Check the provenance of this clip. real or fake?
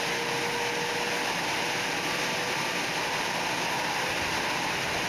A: real